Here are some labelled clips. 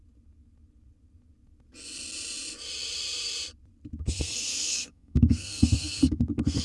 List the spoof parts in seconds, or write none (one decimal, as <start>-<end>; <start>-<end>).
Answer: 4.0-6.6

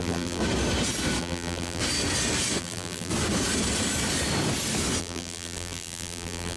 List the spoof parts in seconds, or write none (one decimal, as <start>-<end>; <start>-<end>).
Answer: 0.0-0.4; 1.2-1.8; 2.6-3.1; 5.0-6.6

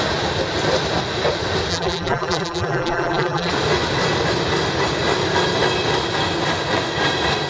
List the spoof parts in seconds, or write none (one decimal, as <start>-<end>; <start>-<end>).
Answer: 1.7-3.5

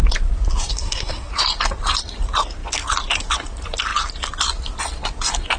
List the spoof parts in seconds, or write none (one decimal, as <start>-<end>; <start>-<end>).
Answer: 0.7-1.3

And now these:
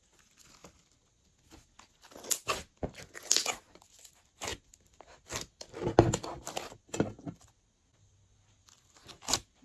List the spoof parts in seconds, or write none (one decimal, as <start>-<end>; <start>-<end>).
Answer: none

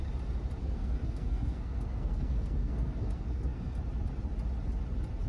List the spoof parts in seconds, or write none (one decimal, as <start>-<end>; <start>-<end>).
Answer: 0.6-3.8

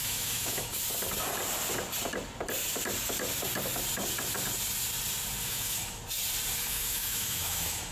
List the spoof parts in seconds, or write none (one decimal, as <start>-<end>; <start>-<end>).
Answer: 0.0-0.8; 5.4-6.0; 6.6-7.9